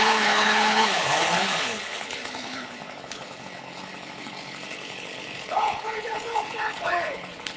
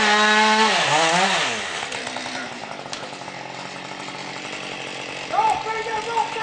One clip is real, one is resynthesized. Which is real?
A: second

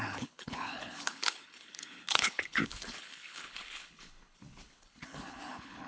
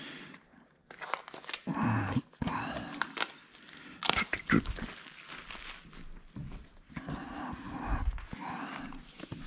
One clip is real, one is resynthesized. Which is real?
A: second